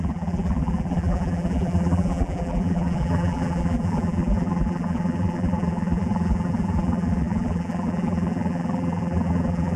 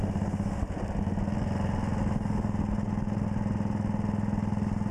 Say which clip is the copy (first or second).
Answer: first